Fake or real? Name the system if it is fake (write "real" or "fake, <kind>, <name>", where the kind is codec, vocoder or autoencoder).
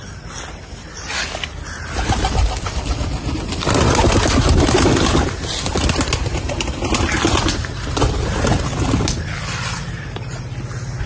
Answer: real